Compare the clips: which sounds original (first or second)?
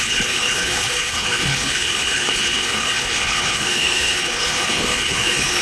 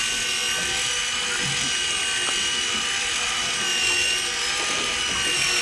second